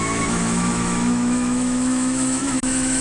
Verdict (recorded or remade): remade